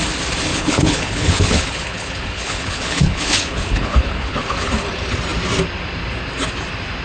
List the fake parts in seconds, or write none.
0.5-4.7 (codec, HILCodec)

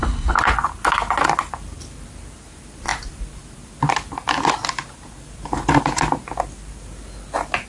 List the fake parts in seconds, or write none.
0.0-0.5 (codec, HILCodec)

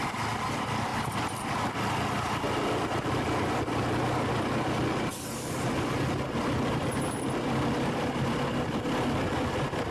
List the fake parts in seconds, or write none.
none

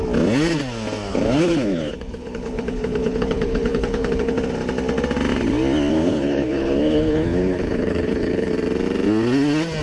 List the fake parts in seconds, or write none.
1.1-4.4 (codec, HILCodec); 5.9-8.5

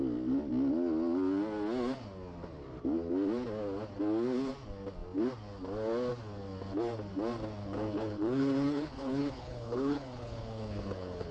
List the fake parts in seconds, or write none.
7.6-11.3 (codec, HILCodec)

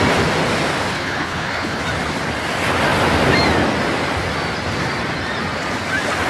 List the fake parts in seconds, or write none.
0.9-1.8 (codec, HILCodec)

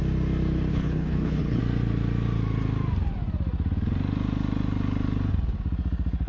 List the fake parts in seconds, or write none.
0.7-1.6 (codec, HILCodec)

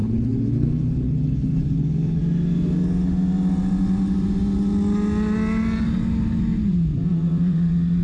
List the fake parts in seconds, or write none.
0.0-2.2 (codec, HILCodec)